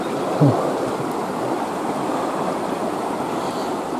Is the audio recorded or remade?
recorded